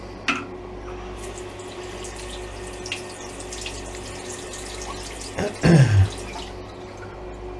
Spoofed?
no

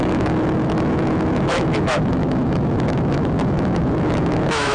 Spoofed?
yes